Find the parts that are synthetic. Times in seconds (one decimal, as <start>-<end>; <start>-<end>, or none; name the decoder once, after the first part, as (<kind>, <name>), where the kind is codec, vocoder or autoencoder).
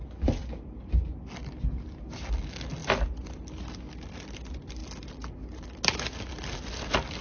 none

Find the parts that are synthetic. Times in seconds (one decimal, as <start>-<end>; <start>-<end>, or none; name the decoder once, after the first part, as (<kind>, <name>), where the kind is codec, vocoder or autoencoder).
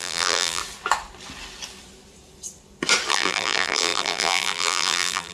0.0-0.6 (vocoder, BigVGAN v2); 3.1-5.3